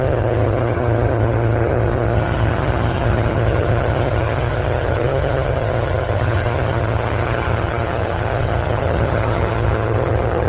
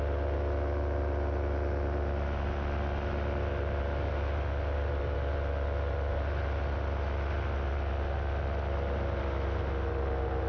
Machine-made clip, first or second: first